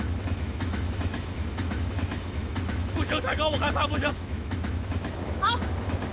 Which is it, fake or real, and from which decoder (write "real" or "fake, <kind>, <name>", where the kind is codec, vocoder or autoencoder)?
fake, autoencoder, DAC-VAE